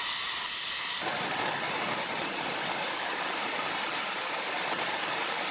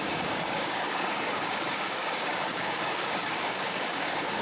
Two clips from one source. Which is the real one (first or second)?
first